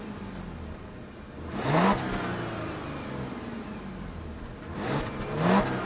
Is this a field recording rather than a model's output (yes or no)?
yes